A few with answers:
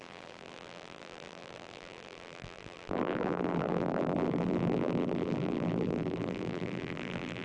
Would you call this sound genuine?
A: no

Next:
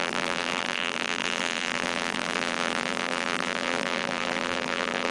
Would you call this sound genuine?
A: no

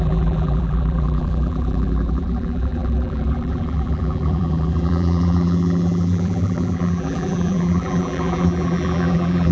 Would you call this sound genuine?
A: no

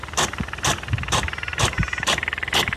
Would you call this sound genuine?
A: no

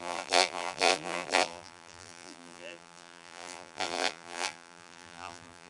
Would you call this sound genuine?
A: no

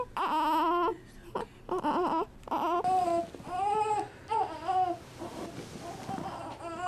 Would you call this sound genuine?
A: yes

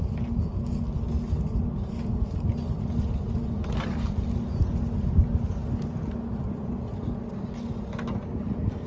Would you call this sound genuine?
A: yes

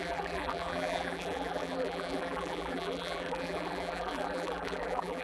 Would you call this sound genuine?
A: no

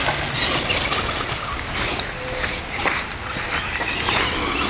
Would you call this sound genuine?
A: yes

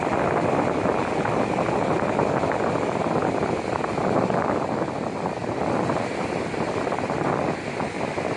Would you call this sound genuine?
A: yes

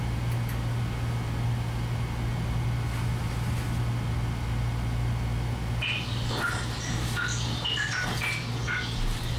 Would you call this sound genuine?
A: yes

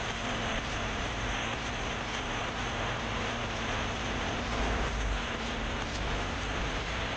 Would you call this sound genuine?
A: no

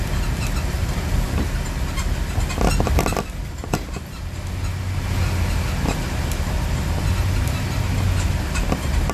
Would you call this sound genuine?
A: yes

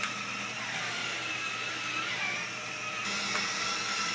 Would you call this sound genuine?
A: yes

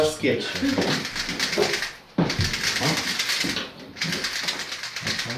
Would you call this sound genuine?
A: yes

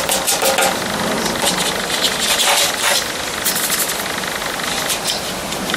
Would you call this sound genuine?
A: yes